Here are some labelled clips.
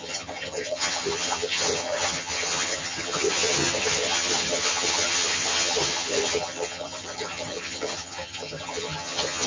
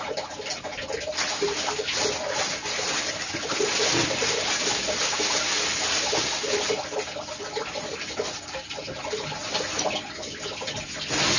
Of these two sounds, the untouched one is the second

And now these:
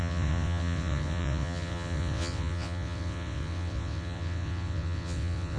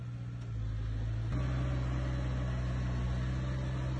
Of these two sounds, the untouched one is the second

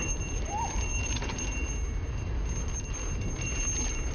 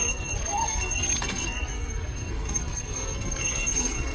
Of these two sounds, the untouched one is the first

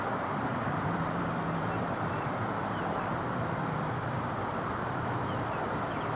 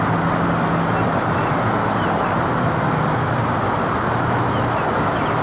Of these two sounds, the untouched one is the second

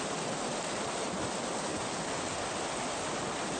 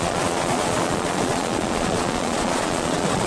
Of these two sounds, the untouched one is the first